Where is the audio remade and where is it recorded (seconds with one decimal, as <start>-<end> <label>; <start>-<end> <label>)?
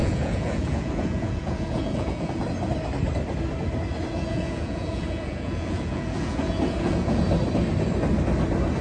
0.0-2.4 remade; 2.4-4.1 recorded; 4.1-7.2 remade; 7.2-8.8 recorded